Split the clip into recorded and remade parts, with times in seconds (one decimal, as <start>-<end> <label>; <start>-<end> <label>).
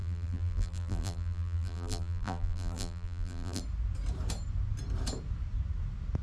0.0-3.6 remade; 3.6-6.2 recorded